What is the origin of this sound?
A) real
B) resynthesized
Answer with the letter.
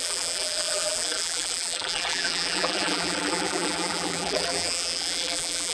B